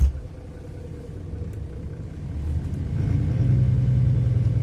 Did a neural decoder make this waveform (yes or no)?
no